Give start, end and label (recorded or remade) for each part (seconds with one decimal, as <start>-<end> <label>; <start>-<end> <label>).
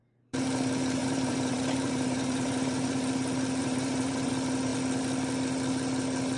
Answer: 0.0-1.0 recorded; 1.0-3.1 remade; 3.1-3.6 recorded; 3.6-4.3 remade; 4.3-6.4 recorded